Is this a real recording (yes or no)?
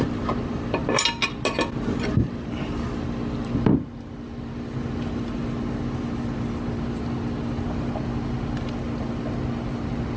yes